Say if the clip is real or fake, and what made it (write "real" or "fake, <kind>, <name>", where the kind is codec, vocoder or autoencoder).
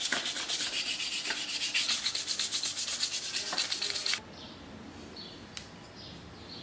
fake, vocoder, BigVGAN v2